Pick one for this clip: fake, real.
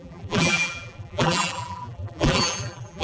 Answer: fake